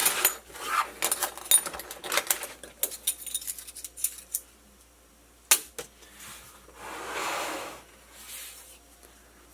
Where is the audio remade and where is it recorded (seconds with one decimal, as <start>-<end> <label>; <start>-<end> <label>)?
0.0-7.2 recorded; 7.2-7.8 remade; 7.8-9.5 recorded